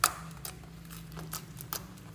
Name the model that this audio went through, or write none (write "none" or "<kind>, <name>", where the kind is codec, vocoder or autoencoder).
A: none